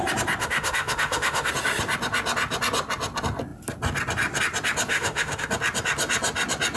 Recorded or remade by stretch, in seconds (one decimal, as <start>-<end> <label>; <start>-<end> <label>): 0.0-0.4 recorded; 0.4-1.5 remade; 1.5-4.9 recorded; 4.9-5.5 remade; 5.5-6.8 recorded